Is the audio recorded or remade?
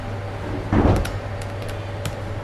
recorded